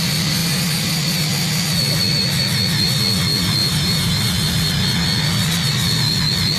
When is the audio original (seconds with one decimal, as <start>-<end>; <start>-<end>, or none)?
0.0-0.4; 0.9-3.6; 4.2-6.6